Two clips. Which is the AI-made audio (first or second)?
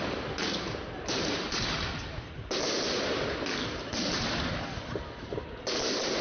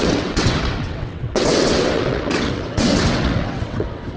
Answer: second